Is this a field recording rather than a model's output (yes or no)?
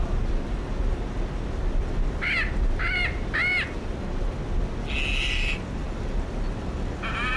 yes